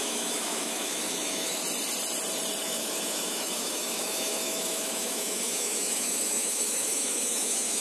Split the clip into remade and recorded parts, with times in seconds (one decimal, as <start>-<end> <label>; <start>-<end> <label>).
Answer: 0.0-1.6 remade; 1.6-2.6 recorded; 2.6-7.8 remade